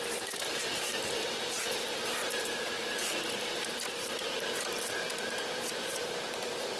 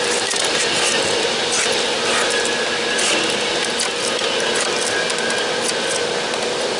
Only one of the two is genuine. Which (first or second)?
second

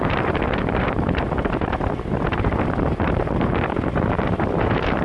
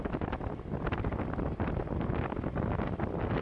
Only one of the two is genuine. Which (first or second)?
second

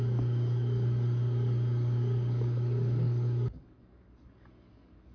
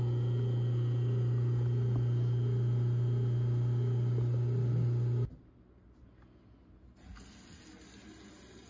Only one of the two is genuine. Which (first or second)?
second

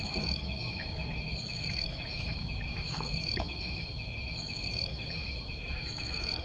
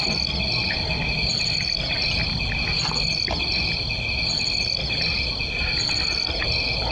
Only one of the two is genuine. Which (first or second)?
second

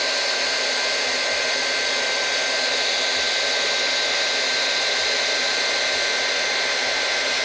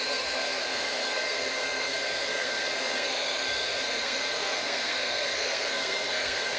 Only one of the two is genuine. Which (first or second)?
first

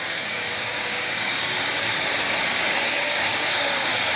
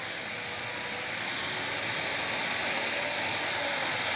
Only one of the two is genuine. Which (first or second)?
second